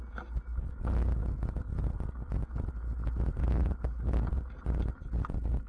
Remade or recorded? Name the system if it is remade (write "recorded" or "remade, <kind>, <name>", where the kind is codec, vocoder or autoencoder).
recorded